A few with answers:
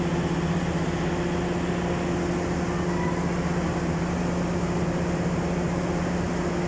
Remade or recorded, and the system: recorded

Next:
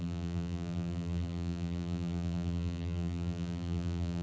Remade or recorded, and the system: remade, vocoder, BigVGAN v2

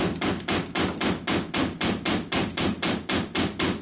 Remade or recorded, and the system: recorded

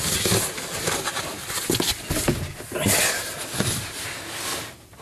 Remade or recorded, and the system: recorded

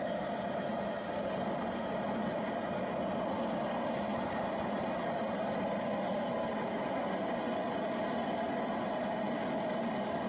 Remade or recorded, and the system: recorded